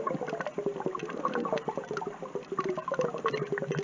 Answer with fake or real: real